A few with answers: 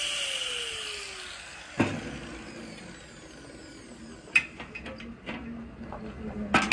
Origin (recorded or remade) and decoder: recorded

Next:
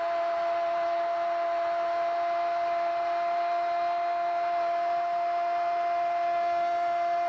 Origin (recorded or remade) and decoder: recorded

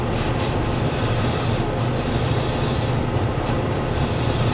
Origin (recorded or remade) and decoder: recorded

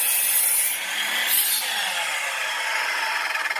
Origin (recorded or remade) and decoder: recorded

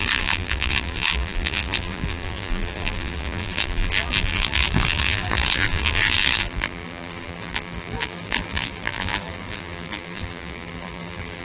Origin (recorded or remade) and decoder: remade, vocoder, BigVGAN v2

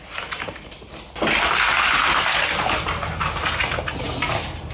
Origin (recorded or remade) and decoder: recorded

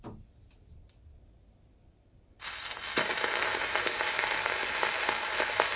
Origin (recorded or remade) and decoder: recorded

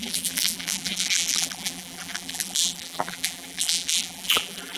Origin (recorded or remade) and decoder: remade, vocoder, BigVGAN v2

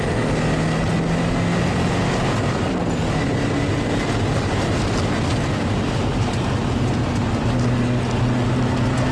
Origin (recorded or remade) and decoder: recorded